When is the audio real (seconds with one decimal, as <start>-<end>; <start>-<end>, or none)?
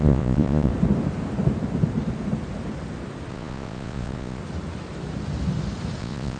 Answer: 0.7-3.3; 4.4-6.0